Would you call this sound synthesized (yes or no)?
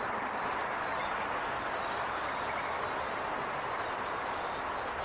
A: no